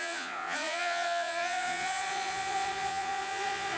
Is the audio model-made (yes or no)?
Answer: yes